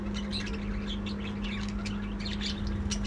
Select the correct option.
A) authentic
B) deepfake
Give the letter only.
A